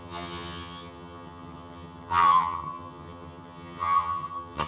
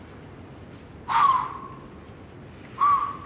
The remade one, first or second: first